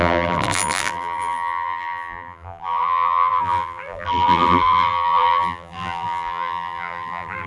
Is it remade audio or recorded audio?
remade